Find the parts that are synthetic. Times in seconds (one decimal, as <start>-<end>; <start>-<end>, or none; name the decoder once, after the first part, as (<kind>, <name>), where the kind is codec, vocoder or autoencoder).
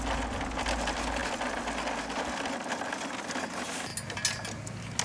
none